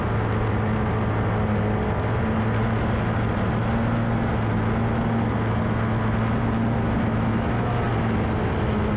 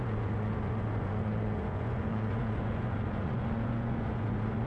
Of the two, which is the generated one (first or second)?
second